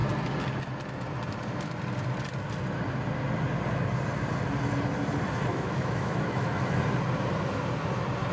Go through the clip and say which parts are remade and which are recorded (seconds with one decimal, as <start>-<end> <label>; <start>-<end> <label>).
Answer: 0.0-5.5 recorded; 5.5-6.8 remade; 6.8-8.3 recorded